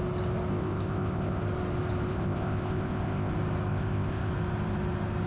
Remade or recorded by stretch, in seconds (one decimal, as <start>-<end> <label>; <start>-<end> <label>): 0.0-0.5 recorded; 0.5-1.4 remade; 1.4-2.1 recorded; 2.1-3.3 remade; 3.3-3.7 recorded; 3.7-4.3 remade; 4.3-5.3 recorded